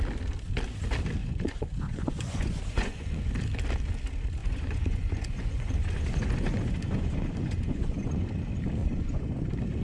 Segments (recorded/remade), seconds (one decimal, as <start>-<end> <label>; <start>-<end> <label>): 0.0-1.2 recorded; 1.2-3.3 remade; 3.3-4.4 recorded; 4.4-8.3 remade; 8.3-8.8 recorded; 8.8-9.4 remade; 9.4-9.8 recorded